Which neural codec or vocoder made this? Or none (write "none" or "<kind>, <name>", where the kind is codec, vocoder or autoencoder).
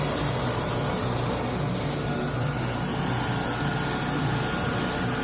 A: none